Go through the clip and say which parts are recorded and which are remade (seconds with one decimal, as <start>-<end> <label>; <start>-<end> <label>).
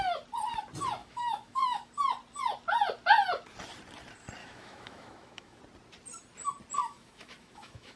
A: 0.0-1.0 recorded; 1.0-1.9 remade; 1.9-4.4 recorded; 4.4-5.6 remade; 5.6-6.8 recorded; 6.8-8.0 remade